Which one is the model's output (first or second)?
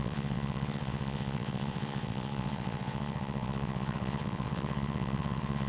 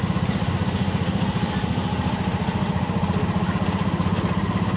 first